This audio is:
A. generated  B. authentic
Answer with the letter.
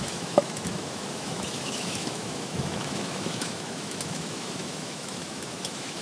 A